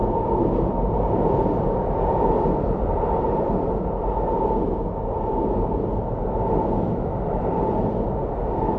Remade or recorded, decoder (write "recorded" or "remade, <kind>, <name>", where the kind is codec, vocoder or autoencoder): recorded